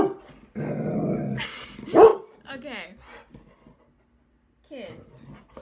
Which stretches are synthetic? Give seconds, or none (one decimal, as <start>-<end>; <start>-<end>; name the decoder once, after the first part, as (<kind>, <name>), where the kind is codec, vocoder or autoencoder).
none